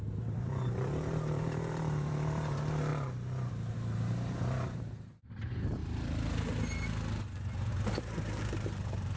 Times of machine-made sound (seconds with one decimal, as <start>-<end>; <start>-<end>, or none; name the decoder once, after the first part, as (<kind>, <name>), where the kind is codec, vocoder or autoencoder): 0.0-2.9 (vocoder, BigVGAN v2); 3.5-5.8; 7.7-9.2